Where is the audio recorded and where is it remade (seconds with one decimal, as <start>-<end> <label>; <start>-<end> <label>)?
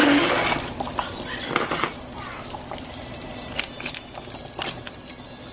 0.0-3.3 remade; 3.3-5.5 recorded